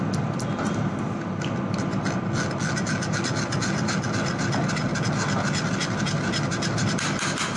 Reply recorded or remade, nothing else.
recorded